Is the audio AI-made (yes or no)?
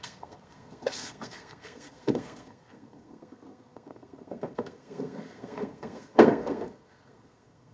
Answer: yes